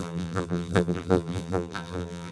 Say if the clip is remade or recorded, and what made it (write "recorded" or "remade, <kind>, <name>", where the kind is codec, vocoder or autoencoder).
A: remade, vocoder, BigVGAN v2